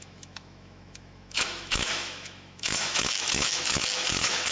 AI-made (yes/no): yes